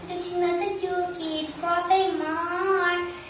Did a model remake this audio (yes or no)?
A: no